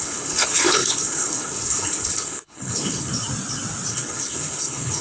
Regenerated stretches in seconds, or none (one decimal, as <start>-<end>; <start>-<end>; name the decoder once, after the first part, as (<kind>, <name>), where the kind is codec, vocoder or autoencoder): 0.0-3.1 (codec, HILCodec); 3.9-5.0